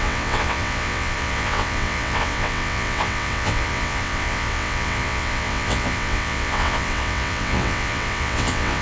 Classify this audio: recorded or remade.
remade